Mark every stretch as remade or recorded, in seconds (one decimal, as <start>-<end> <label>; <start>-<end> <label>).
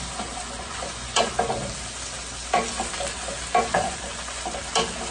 0.0-0.4 recorded; 0.4-1.3 remade; 1.3-3.7 recorded; 3.7-4.4 remade; 4.4-5.1 recorded